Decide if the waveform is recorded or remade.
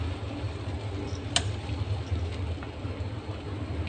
recorded